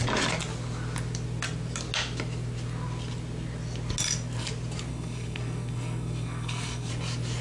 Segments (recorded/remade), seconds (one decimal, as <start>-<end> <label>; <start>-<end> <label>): 0.0-4.9 recorded; 4.9-6.9 remade; 6.9-7.4 recorded